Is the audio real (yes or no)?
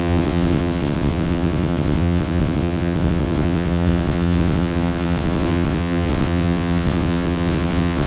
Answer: no